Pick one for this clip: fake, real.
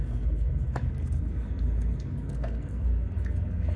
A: fake